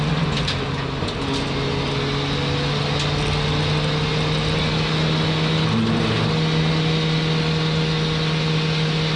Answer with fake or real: real